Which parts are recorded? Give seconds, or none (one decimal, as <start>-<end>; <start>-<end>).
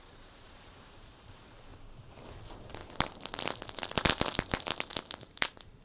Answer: 1.7-2.3; 2.8-5.2